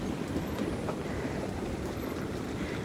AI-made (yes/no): no